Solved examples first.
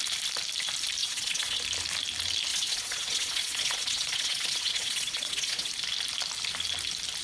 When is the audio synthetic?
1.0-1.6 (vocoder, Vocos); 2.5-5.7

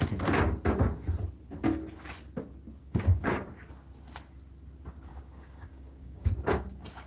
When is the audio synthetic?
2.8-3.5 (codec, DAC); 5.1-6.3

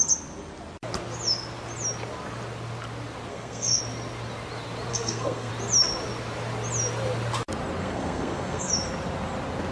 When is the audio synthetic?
3.3-3.8 (codec, SNAC); 4.9-5.5; 7.8-8.7